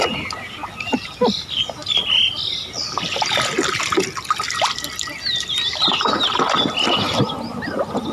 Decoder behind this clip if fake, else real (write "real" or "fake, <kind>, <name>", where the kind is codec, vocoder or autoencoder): real